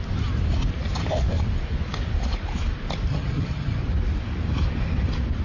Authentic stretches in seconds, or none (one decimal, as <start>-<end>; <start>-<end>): 0.0-3.1; 3.8-5.4